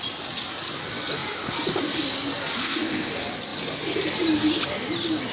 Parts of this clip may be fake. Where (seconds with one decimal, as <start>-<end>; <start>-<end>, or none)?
2.6-3.1